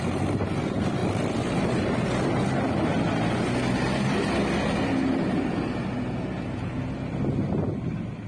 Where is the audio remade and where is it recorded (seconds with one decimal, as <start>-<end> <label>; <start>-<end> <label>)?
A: 0.0-8.3 recorded